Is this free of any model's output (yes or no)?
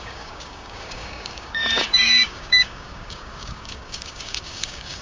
no